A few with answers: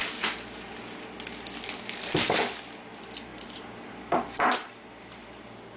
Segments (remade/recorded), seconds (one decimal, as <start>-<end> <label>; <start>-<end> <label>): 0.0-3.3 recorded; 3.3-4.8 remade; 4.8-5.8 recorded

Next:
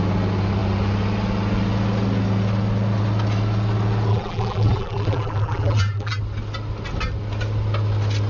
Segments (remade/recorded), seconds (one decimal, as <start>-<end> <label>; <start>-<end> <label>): 0.0-4.1 recorded; 4.1-6.2 remade; 6.2-8.3 recorded

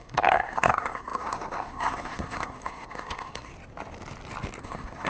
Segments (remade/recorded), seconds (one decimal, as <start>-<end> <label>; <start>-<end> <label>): 0.0-3.5 remade; 3.5-4.6 recorded; 4.6-5.1 remade

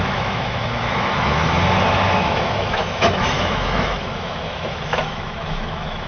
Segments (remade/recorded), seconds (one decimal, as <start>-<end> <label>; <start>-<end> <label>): 0.0-1.4 remade; 1.4-2.2 recorded; 2.2-6.1 remade

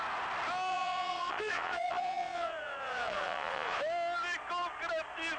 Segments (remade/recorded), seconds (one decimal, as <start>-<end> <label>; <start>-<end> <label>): 0.0-0.7 recorded; 0.7-3.8 remade; 3.8-5.4 recorded

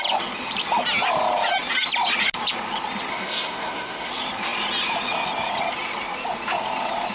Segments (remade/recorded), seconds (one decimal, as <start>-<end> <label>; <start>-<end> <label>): 0.0-3.1 recorded; 3.1-4.1 remade; 4.1-7.1 recorded